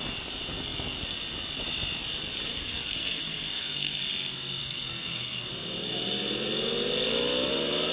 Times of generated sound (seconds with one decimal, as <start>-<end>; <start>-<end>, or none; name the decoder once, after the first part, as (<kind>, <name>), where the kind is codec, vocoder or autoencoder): 2.5-4.0 (codec, SNAC); 4.6-5.5